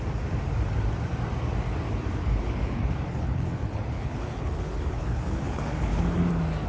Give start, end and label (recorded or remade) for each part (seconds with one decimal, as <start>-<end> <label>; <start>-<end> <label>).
0.0-2.2 recorded; 2.2-6.2 remade; 6.2-6.7 recorded